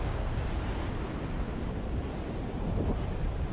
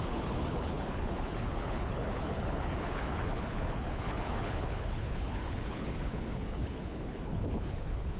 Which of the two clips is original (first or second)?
first